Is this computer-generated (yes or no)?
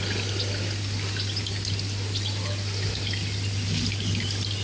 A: no